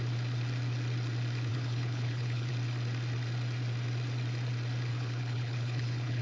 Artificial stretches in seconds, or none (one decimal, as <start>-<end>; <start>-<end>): 1.5-2.5; 4.9-6.2